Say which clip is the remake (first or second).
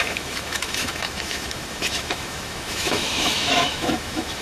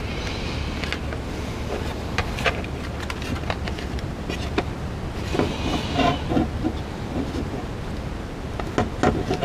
first